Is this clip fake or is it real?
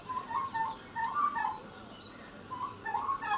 real